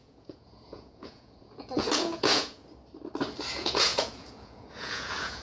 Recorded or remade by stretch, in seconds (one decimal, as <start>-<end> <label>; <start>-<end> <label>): 0.0-2.6 remade; 2.6-3.5 recorded; 3.5-5.4 remade